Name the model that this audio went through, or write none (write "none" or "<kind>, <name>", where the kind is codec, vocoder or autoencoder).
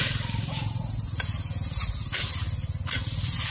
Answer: none